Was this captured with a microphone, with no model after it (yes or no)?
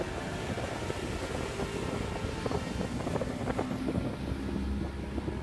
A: yes